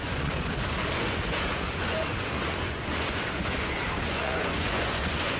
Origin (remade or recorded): remade